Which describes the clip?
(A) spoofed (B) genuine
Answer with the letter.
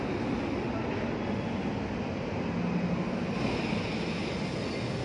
B